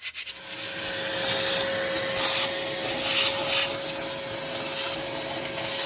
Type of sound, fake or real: real